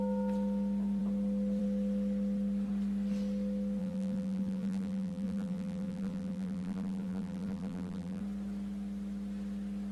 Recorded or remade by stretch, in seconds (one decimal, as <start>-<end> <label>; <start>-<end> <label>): 0.0-3.8 recorded; 3.8-8.2 remade; 8.2-9.9 recorded